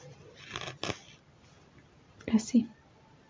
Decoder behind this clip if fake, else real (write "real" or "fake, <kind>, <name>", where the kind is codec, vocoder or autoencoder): real